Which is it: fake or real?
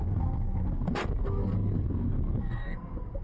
fake